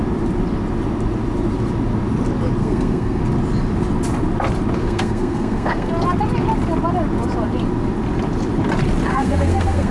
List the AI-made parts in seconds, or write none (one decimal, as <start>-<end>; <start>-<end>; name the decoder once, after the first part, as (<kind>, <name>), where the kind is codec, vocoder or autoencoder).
2.6-3.2 (codec, SNAC); 4.8-5.9; 9.1-9.9

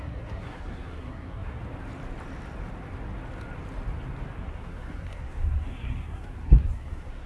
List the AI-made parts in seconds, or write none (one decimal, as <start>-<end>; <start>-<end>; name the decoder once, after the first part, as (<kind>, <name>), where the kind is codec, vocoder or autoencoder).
0.0-1.6 (codec, SNAC); 4.4-7.3